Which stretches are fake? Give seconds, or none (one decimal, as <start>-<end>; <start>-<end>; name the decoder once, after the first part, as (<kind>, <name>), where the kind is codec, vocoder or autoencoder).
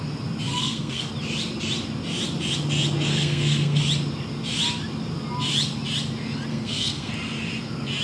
0.5-1.1 (codec, SNAC); 3.1-3.8; 6.5-7.1